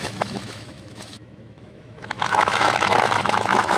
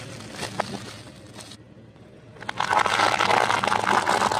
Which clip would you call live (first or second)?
second